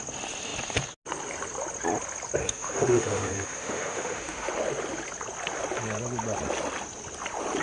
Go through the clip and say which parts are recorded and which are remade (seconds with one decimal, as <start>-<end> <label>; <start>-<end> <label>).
0.0-2.4 recorded; 2.4-4.5 remade; 4.5-7.6 recorded